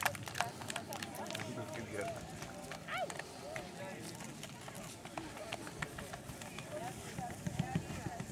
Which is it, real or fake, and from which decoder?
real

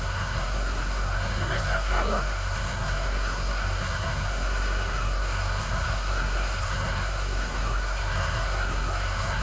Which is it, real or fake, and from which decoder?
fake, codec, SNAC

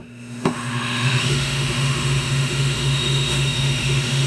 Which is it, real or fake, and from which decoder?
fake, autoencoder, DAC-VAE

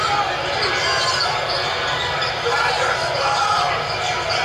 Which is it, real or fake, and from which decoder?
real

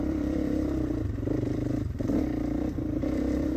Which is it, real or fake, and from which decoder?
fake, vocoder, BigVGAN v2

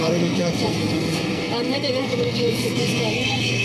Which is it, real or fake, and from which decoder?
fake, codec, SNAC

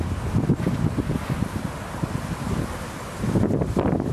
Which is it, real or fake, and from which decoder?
real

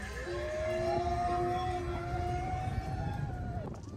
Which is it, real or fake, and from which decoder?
real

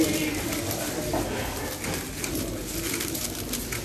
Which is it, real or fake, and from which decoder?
real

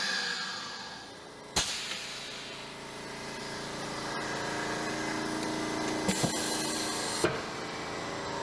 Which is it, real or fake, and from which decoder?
real